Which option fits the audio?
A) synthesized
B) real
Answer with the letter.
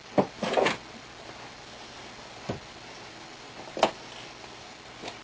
B